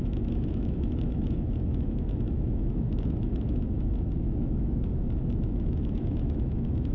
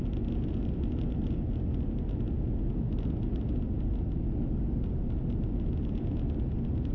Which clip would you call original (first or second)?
second